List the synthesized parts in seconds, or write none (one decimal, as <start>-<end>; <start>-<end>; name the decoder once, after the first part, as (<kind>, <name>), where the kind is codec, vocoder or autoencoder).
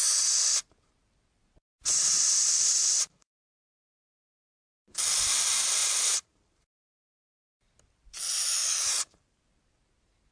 2.4-4.6 (vocoder, BigVGAN v2); 5.8-7.6; 8.6-9.4